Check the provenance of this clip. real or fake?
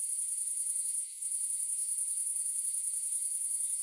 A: fake